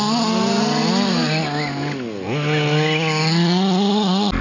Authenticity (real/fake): real